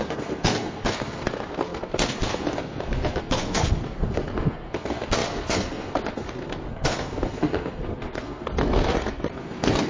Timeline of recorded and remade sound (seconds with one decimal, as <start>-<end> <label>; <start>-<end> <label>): 0.0-9.9 remade